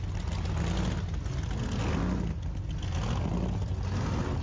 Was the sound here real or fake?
real